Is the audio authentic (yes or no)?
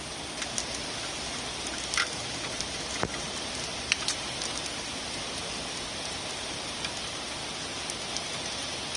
yes